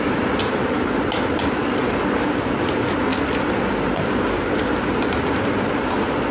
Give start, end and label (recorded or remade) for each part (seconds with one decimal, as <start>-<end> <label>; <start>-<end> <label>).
0.0-6.3 recorded